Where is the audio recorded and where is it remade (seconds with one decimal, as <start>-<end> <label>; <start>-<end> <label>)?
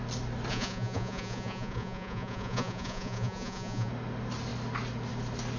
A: 0.0-0.5 recorded; 0.5-3.9 remade; 3.9-5.6 recorded